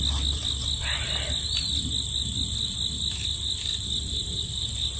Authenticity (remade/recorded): recorded